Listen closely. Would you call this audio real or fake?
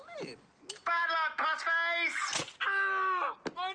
real